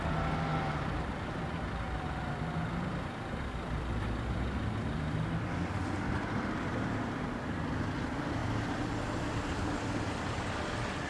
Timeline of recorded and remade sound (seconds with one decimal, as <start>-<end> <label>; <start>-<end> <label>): 0.0-11.1 remade